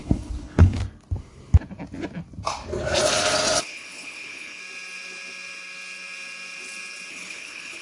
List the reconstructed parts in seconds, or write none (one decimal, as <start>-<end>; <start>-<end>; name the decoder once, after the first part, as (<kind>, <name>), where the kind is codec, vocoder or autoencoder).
0.0-0.8 (codec, HILCodec); 3.6-4.6; 7.1-7.8